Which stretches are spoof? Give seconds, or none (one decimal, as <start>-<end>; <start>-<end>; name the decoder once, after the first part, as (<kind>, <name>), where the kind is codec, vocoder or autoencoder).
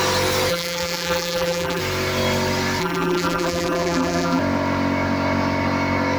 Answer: 0.5-1.8 (vocoder, BigVGAN v2); 2.8-4.4